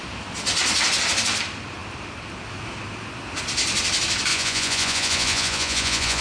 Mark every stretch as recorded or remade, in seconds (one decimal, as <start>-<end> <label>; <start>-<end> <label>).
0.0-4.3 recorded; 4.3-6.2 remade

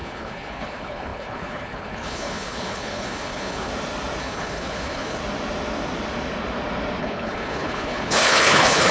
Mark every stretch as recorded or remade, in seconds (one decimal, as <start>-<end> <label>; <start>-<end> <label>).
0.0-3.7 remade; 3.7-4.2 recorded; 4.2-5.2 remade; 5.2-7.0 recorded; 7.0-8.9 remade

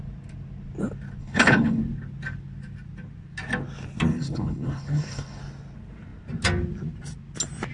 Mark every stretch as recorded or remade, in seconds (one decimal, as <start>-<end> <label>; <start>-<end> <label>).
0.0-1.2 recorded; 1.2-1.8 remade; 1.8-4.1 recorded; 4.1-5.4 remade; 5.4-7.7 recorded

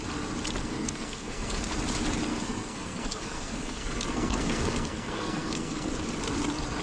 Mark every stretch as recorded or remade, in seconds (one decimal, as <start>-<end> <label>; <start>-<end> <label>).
0.0-0.6 recorded; 0.6-1.8 remade; 1.8-2.3 recorded; 2.3-5.9 remade; 5.9-6.8 recorded

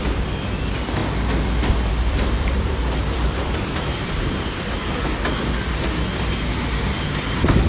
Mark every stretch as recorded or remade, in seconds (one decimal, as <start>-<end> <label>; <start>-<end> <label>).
0.0-1.0 remade; 1.0-1.9 recorded; 1.9-4.8 remade; 4.8-7.0 recorded; 7.0-7.7 remade